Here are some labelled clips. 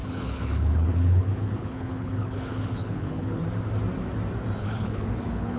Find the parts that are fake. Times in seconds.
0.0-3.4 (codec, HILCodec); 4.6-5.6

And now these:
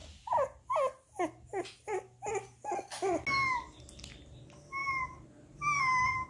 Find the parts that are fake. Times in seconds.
none

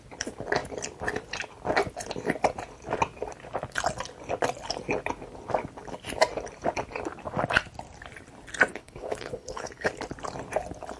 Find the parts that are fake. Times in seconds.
8.7-9.9 (codec, HILCodec)

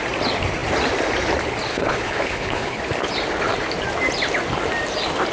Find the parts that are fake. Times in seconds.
1.7-2.8 (codec, HILCodec)

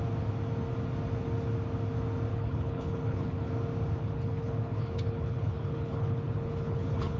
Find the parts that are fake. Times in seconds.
2.3-3.5 (codec, HILCodec); 4.0-7.2

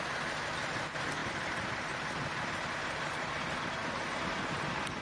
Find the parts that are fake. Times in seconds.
none

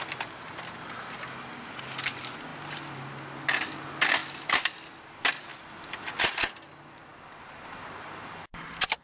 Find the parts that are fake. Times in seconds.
none